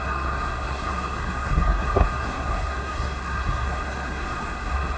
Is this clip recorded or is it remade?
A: remade